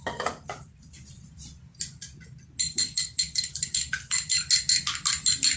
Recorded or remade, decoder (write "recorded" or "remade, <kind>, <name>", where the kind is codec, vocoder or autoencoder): recorded